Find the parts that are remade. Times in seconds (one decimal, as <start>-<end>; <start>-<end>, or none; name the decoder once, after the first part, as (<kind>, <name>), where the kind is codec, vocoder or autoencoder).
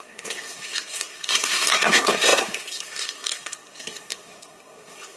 0.0-5.2 (codec, SNAC)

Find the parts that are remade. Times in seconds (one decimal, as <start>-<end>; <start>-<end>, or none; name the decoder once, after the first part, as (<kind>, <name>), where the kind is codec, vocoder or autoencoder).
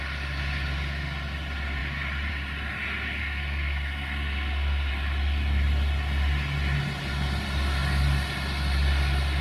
3.2-4.9 (codec, SNAC)